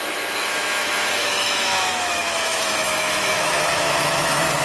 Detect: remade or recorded remade